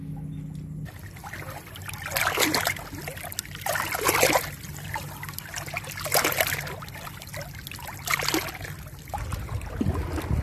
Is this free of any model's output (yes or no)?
yes